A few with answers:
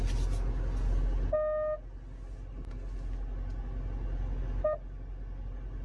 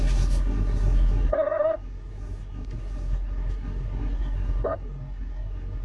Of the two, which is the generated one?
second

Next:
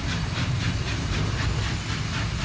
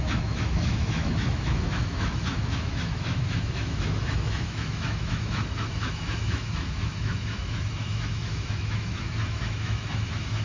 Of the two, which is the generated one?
second